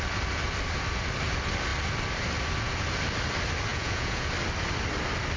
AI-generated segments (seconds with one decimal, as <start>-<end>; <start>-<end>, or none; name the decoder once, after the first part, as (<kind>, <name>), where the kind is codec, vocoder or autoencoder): 3.7-4.3 (vocoder, Vocos)